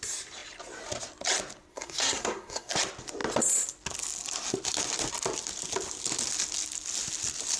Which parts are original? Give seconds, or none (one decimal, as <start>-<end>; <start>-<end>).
0.0-1.7; 2.7-7.6